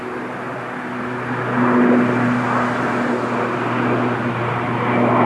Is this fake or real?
real